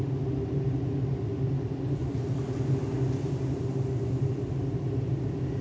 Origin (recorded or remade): recorded